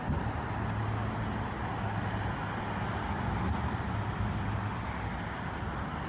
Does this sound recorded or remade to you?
recorded